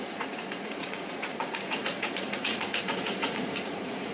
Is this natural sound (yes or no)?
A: no